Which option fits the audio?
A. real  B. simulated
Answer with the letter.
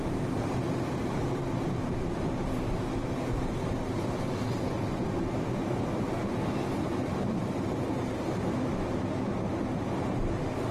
A